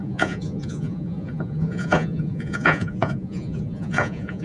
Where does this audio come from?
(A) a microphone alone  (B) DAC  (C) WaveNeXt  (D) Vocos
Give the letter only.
D